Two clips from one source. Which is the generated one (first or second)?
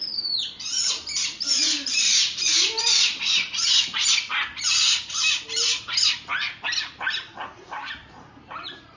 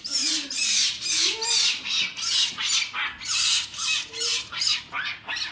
first